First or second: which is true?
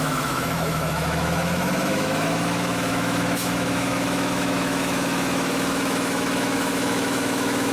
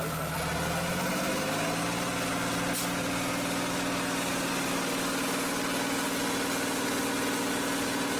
second